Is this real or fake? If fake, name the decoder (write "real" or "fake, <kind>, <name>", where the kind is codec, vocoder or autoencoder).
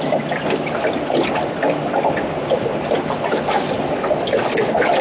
real